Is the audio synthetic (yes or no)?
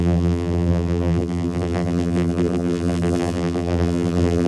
yes